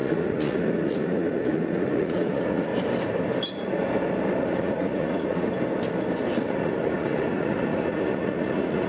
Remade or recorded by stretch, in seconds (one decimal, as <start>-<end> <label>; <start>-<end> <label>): 0.0-2.7 remade; 2.7-4.4 recorded; 4.4-5.5 remade; 5.5-6.3 recorded; 6.3-8.9 remade